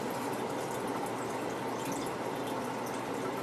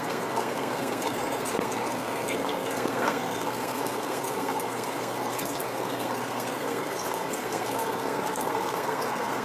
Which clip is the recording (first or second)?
first